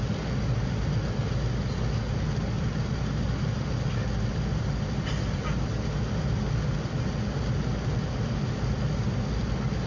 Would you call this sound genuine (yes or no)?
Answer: yes